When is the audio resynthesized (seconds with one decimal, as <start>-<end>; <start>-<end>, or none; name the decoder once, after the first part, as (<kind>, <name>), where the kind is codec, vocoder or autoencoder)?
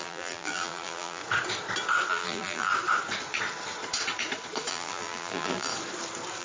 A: 0.0-1.2 (vocoder, BigVGAN v2); 2.1-2.7; 4.7-5.7